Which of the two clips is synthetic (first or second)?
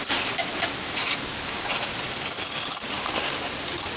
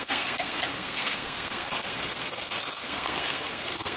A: second